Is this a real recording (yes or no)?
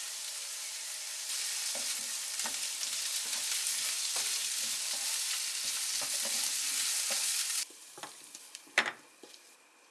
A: no